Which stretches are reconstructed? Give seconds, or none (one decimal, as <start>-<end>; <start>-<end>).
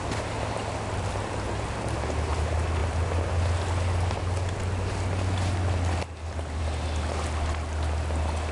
none